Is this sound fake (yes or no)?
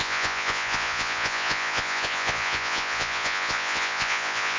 yes